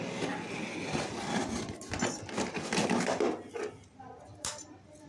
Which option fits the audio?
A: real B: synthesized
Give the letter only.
A